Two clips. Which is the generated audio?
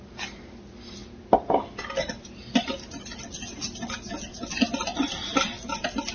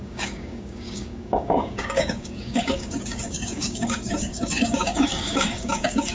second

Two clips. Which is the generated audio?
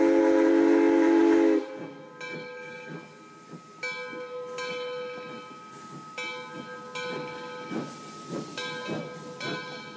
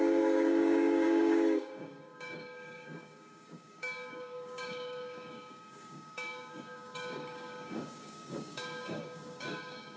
second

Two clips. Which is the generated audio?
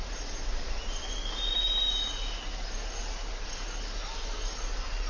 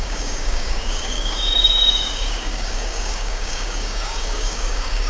second